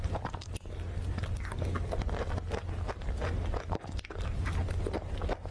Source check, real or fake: real